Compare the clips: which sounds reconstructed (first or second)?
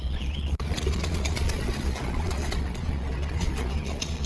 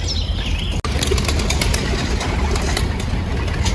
first